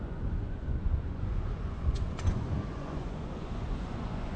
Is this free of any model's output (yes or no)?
no